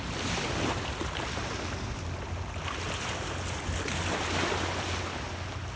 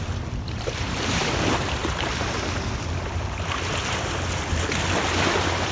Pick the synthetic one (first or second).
second